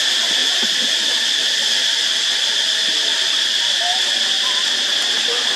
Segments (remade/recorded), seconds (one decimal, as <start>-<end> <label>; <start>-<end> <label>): 0.0-1.6 remade; 1.6-5.0 recorded; 5.0-5.6 remade